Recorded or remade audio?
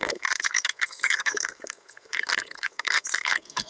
remade